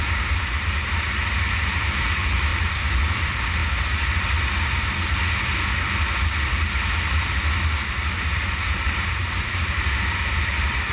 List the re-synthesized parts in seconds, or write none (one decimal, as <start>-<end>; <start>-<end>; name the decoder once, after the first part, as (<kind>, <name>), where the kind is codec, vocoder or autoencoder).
0.0-2.5 (vocoder, BigVGAN v2); 3.0-3.6; 8.2-10.9